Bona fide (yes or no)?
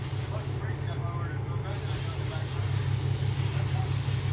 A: yes